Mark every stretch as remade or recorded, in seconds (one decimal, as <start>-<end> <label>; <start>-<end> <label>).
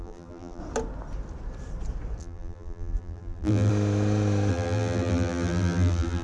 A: 0.0-0.6 remade; 0.6-2.2 recorded; 2.2-3.7 remade; 3.7-4.5 recorded; 4.5-6.2 remade